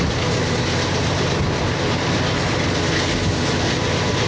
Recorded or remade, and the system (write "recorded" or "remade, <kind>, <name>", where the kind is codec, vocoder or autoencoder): recorded